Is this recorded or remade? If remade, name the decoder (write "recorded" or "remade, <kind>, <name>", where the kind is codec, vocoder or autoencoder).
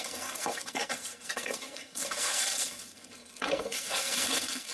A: remade, codec, SNAC